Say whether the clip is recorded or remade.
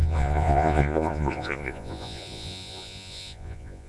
remade